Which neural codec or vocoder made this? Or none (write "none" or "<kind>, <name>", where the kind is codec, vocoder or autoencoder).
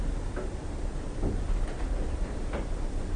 none